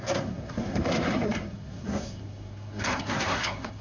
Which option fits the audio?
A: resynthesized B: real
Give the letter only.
A